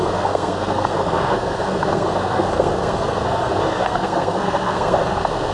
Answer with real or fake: fake